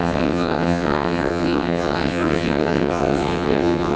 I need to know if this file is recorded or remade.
remade